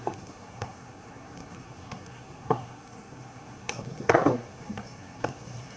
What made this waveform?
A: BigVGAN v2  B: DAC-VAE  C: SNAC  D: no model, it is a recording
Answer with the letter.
C